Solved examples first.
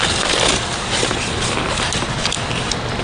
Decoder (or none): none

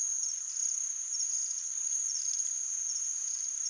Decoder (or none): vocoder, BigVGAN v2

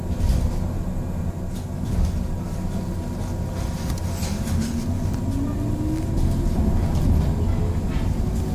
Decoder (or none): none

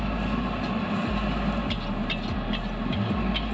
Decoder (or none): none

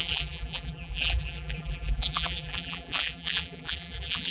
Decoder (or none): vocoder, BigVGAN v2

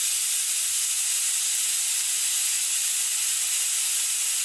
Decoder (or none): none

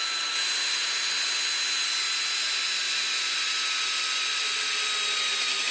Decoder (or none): none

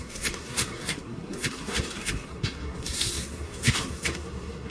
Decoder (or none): codec, SNAC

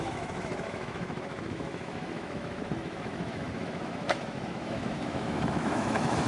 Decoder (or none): autoencoder, DAC-VAE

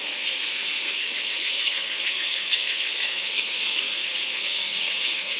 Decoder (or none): codec, SNAC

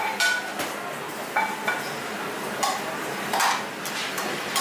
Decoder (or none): none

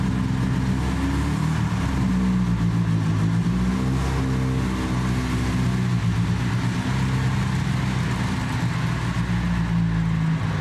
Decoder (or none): none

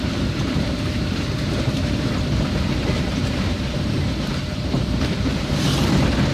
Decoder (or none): vocoder, BigVGAN v2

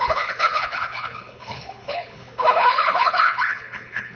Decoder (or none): codec, HILCodec